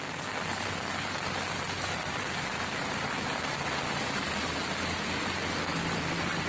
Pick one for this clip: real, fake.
real